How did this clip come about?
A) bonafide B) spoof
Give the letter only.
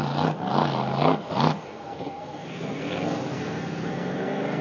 B